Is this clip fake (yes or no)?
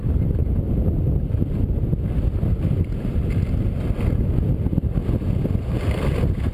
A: no